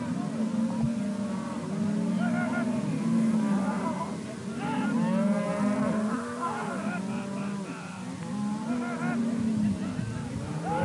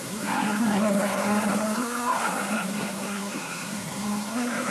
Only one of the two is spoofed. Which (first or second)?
second